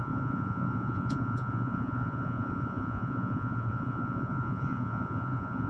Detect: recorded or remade remade